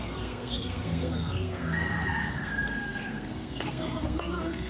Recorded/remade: remade